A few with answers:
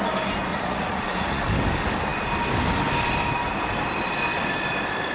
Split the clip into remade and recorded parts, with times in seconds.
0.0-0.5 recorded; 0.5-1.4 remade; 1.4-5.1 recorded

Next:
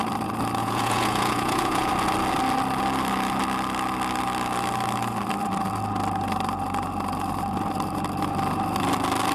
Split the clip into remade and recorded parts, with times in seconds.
0.0-0.6 recorded; 0.6-1.9 remade; 1.9-9.3 recorded

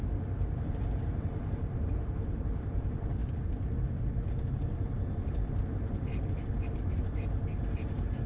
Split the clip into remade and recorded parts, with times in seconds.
0.0-8.3 recorded

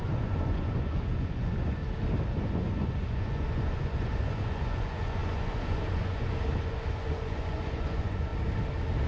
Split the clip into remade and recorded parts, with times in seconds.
0.0-1.8 remade; 1.8-2.4 recorded; 2.4-8.3 remade; 8.3-9.1 recorded

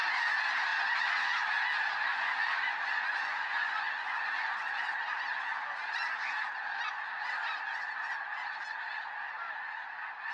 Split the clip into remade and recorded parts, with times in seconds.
0.0-2.1 recorded; 2.1-4.7 remade; 4.7-10.3 recorded

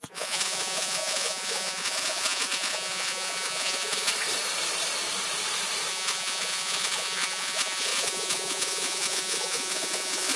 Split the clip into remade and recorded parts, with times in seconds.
0.0-4.1 remade; 4.1-5.9 recorded; 5.9-10.4 remade